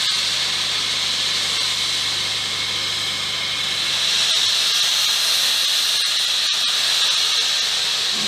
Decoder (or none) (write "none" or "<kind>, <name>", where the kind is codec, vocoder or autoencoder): none